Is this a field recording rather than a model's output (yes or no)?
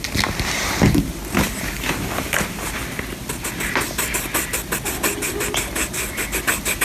yes